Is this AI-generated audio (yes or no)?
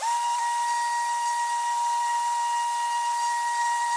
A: no